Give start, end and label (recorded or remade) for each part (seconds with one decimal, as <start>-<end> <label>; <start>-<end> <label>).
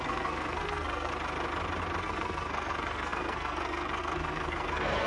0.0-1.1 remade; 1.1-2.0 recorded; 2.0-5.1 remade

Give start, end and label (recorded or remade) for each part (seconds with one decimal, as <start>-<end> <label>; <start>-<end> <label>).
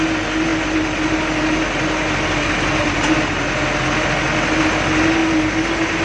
0.0-6.0 recorded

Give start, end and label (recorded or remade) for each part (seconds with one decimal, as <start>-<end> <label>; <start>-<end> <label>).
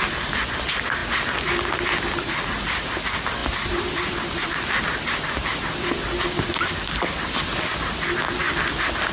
0.0-9.1 recorded